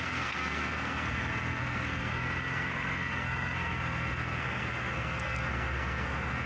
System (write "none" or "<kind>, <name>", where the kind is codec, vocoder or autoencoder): codec, SNAC